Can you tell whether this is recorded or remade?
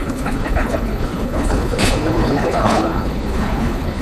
remade